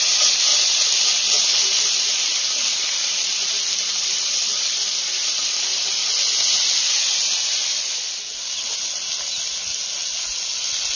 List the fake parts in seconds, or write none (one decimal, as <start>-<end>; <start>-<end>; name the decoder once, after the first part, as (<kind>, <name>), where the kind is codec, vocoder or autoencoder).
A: none

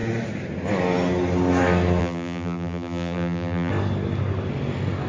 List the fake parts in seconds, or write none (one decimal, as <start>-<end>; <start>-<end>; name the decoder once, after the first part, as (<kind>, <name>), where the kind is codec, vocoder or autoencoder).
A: 2.0-3.7 (vocoder, BigVGAN v2)

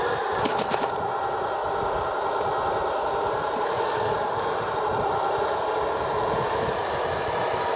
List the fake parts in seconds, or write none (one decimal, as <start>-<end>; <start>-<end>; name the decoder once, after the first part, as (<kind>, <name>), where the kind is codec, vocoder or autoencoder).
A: none

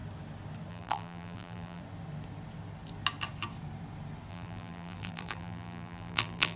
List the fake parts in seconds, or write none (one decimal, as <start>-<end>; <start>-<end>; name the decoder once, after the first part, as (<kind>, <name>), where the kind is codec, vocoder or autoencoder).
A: 0.7-1.8 (vocoder, BigVGAN v2); 4.3-6.6

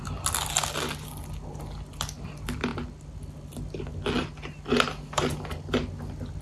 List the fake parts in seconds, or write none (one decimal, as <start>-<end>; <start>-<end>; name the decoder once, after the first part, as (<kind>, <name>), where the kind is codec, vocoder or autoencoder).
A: none

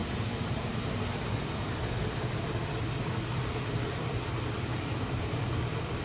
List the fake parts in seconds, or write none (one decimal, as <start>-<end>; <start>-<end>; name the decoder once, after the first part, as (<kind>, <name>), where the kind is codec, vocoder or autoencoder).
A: 0.0-6.0 (vocoder, BigVGAN v2)

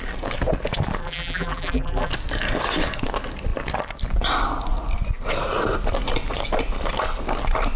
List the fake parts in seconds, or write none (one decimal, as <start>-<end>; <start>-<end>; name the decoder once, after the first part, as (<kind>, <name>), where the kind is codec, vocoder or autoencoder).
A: 1.0-2.1 (vocoder, BigVGAN v2)